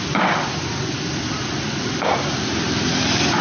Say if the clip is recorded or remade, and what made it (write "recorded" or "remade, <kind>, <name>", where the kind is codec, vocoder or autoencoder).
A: recorded